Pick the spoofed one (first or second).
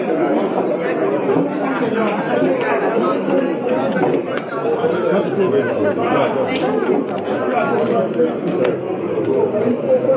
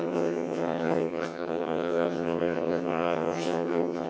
second